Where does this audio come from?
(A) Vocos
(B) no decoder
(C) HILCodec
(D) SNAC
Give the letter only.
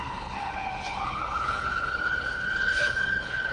C